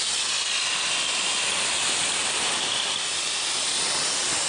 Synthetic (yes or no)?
no